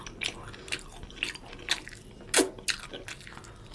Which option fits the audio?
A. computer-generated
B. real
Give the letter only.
B